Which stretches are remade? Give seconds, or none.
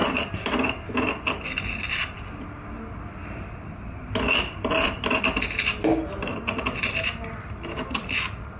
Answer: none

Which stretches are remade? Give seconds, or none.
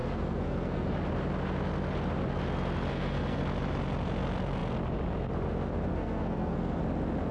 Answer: 0.0-0.9; 2.9-3.4; 5.9-6.8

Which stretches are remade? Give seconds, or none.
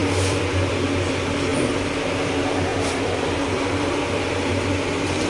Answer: 0.0-0.7; 1.5-2.3; 2.7-4.2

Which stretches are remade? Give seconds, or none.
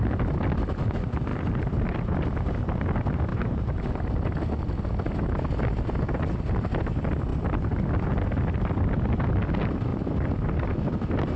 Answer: 1.3-2.5; 3.3-3.8; 9.9-10.7